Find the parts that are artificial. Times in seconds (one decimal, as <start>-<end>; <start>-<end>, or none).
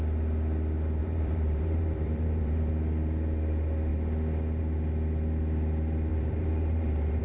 1.0-2.7; 6.1-7.2